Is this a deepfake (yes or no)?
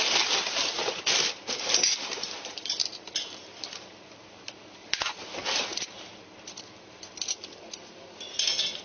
no